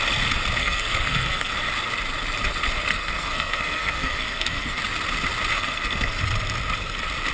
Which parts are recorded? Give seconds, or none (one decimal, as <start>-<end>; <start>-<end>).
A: 0.0-0.6; 1.5-2.9; 4.8-5.5; 6.2-7.3